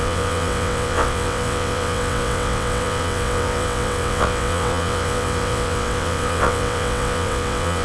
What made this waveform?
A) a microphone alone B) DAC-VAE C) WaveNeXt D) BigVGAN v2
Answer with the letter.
C